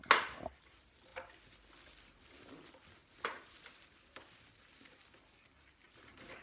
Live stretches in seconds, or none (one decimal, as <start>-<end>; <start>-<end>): 0.0-6.4